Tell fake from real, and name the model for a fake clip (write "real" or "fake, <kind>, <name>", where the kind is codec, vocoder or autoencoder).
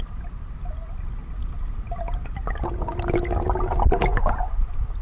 real